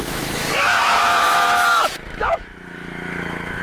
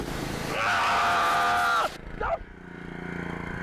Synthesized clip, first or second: first